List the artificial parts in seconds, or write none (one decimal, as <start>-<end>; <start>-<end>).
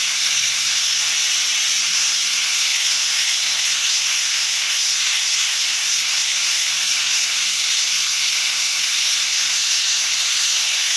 0.0-1.0; 1.8-11.0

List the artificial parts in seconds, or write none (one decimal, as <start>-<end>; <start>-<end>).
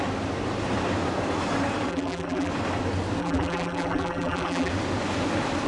1.9-2.5; 3.2-4.7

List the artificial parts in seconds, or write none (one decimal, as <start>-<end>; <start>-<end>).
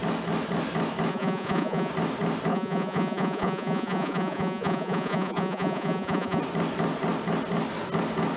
1.1-1.9; 2.5-6.4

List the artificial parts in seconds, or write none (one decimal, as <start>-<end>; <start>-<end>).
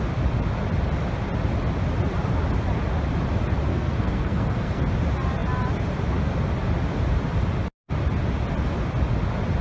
3.7-4.8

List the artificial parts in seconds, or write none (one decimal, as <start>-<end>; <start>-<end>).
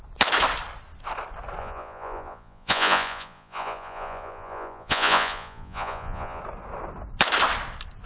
1.6-6.4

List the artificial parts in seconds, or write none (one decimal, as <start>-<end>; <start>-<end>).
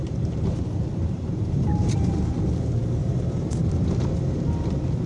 0.0-2.3; 3.0-4.1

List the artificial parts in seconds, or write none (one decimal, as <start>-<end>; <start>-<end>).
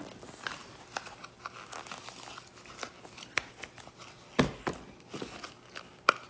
none